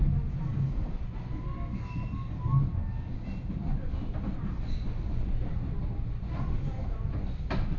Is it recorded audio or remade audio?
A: recorded